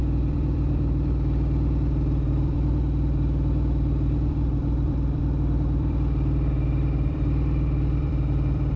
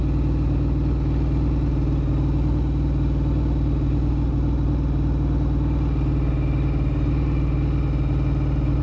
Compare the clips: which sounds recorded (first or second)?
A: second